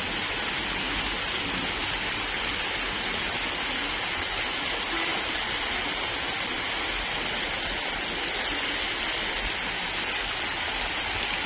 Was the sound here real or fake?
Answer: real